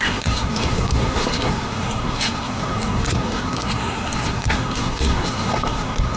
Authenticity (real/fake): fake